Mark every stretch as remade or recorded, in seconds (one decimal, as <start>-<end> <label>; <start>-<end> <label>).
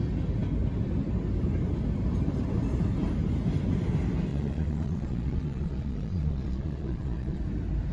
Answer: 0.0-4.3 recorded; 4.3-7.4 remade; 7.4-7.9 recorded